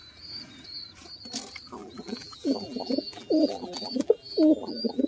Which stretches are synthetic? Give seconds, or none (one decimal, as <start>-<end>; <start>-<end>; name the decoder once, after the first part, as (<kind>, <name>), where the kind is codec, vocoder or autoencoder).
1.8-5.1 (vocoder, BigVGAN v2)